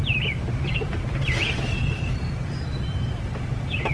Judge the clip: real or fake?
fake